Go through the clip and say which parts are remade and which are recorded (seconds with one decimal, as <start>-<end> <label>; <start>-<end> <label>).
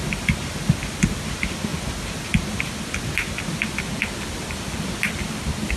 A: 0.0-5.8 recorded